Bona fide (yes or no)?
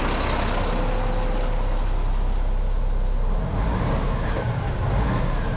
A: yes